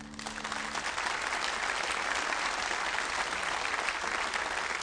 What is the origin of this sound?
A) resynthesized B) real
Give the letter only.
B